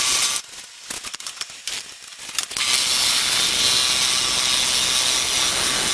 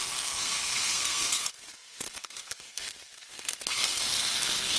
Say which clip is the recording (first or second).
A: first